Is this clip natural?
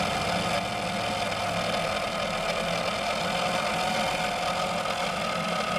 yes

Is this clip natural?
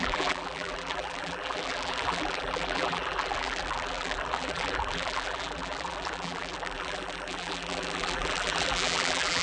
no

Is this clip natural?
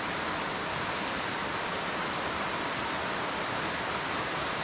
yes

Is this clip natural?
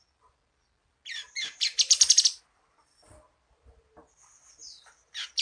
no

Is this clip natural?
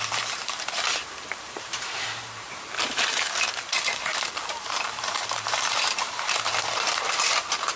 no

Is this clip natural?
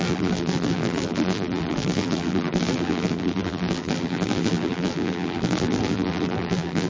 no